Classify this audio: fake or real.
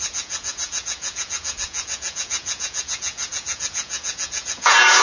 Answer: fake